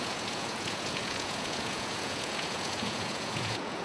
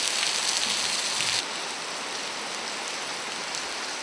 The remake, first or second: first